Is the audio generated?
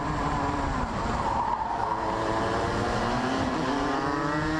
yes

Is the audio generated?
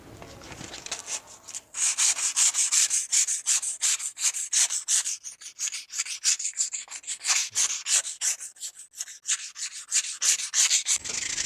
no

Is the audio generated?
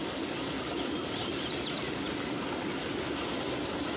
no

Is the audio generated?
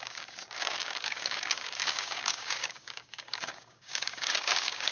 yes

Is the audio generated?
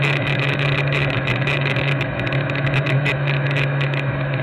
yes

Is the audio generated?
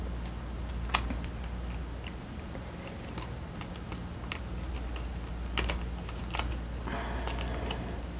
no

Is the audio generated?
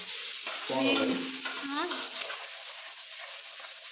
no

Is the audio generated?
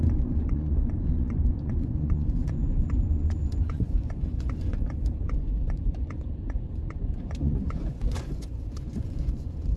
yes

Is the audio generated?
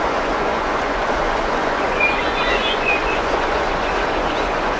yes